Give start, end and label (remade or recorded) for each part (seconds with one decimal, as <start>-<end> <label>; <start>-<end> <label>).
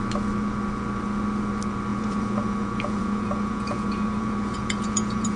0.0-1.9 recorded; 1.9-5.4 remade